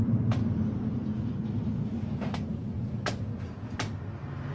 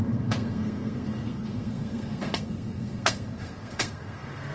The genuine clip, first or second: first